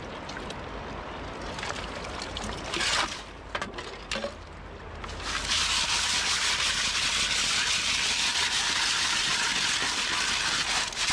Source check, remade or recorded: recorded